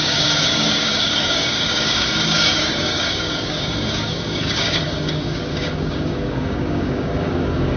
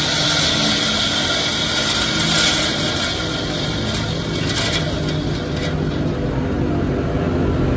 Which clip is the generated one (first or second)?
first